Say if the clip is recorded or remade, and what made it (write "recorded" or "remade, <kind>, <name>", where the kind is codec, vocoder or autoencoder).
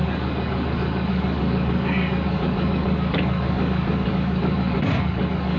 remade, codec, DAC